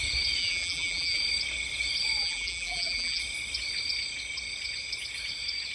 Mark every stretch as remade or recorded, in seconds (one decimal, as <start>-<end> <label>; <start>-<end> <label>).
0.0-0.4 recorded; 0.4-1.2 remade; 1.2-2.2 recorded; 2.2-3.2 remade; 3.2-5.7 recorded

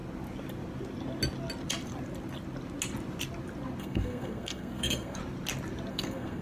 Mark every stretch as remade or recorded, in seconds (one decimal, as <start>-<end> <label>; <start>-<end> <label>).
0.0-3.8 recorded; 3.8-5.2 remade; 5.2-5.9 recorded; 5.9-6.4 remade

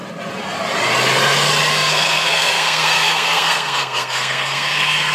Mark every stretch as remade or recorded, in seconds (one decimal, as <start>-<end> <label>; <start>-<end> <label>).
0.0-1.7 recorded; 1.7-5.1 remade

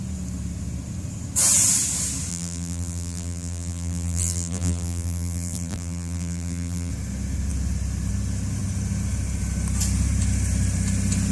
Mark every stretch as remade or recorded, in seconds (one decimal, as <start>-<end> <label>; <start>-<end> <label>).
0.0-2.3 recorded; 2.3-6.9 remade; 6.9-11.3 recorded